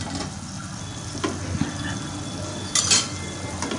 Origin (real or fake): real